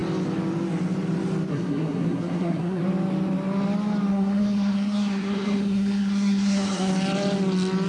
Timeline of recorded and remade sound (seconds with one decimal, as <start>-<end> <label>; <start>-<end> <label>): 0.0-1.5 recorded; 1.5-2.8 remade; 2.8-4.1 recorded; 4.1-6.9 remade; 6.9-7.9 recorded